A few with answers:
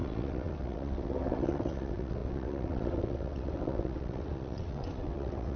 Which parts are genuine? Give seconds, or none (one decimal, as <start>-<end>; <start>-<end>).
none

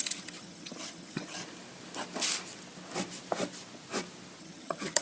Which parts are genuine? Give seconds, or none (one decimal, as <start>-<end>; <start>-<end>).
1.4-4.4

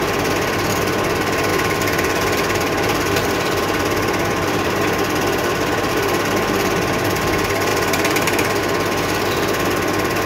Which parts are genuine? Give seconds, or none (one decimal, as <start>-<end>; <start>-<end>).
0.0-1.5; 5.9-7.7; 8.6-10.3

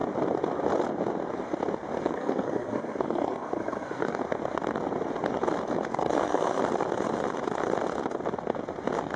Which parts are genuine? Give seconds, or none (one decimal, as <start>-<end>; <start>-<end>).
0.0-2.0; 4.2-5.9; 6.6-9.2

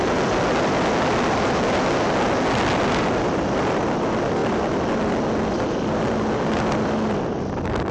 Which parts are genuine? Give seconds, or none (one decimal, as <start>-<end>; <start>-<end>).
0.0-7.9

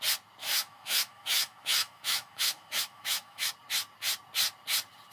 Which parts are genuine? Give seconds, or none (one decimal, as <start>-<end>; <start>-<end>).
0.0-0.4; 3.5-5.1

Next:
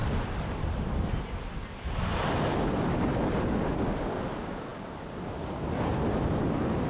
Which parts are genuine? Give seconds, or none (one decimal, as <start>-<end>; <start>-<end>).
0.0-6.9

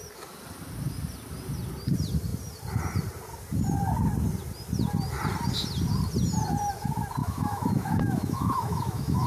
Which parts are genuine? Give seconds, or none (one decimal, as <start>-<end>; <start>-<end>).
0.0-7.2